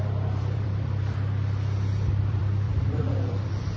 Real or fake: fake